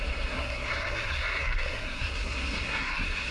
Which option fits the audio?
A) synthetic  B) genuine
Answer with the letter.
A